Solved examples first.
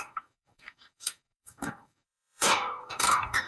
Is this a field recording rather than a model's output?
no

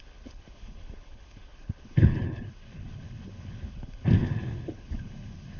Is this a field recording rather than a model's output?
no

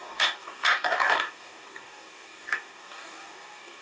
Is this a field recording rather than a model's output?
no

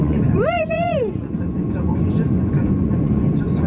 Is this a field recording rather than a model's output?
no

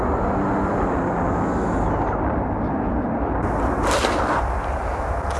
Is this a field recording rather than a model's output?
yes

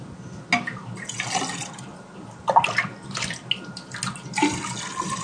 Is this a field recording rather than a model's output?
yes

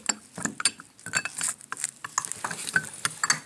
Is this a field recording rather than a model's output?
yes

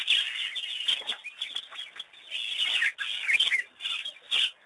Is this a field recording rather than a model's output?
yes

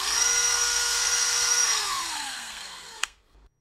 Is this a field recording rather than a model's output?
no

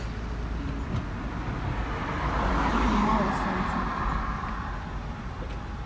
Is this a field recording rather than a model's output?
yes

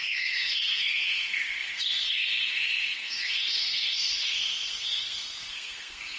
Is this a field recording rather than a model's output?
no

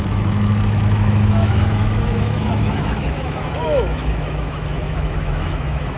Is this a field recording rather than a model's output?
no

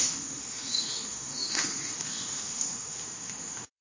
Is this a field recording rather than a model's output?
no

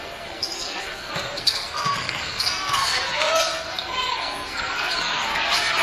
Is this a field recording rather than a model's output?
no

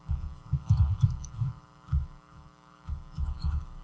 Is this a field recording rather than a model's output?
no